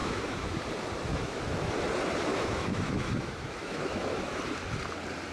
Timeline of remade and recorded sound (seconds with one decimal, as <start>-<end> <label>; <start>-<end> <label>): 0.0-0.6 remade; 0.6-1.1 recorded; 1.1-1.7 remade; 1.7-2.3 recorded; 2.3-4.4 remade; 4.4-5.3 recorded